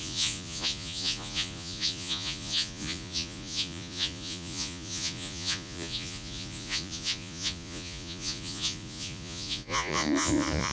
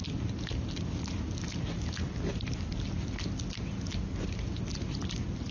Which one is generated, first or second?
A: first